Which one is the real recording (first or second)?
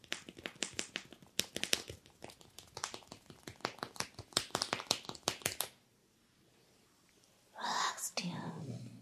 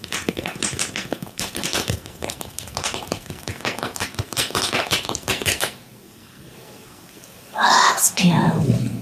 first